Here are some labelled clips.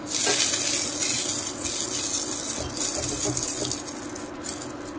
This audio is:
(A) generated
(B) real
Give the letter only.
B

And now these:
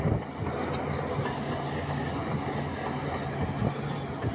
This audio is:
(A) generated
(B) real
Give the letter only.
B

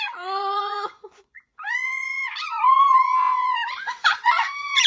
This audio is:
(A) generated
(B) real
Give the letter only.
A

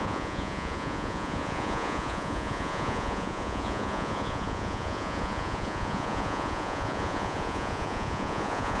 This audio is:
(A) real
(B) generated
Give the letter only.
B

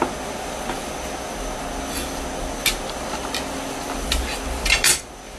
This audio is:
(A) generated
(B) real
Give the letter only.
B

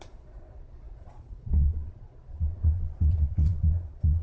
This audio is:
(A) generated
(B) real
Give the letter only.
A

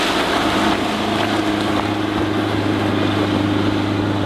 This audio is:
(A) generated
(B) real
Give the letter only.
B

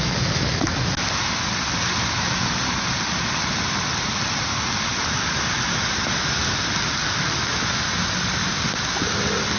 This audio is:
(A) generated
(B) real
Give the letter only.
B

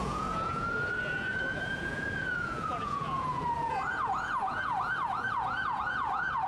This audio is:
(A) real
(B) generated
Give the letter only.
B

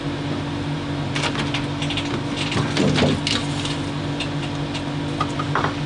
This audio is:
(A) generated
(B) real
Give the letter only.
B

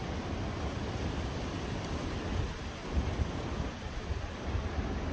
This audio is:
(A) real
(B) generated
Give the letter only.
A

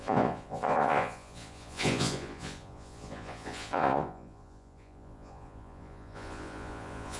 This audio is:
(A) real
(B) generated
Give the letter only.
B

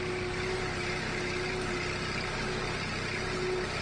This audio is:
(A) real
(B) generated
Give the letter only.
A